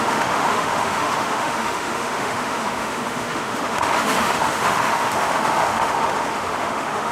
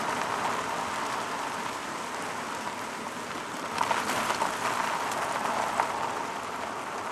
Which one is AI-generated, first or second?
first